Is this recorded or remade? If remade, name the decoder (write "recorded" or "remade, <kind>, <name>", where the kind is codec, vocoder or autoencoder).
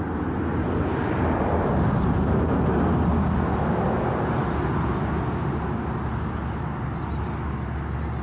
recorded